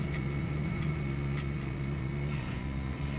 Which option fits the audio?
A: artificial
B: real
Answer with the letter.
A